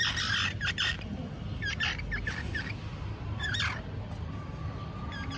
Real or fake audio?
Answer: real